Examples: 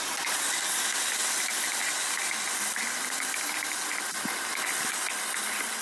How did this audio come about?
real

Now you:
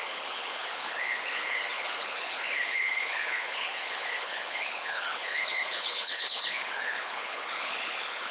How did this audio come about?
fake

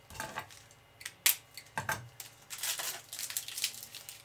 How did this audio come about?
real